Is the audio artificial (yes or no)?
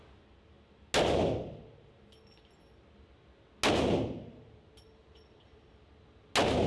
no